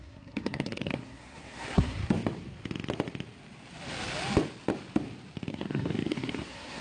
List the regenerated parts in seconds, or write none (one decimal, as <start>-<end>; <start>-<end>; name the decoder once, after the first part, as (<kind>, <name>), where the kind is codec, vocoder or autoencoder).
0.0-2.0 (codec, SNAC); 5.5-6.8